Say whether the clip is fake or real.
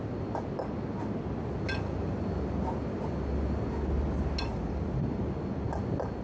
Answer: real